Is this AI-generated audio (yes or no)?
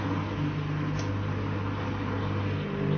no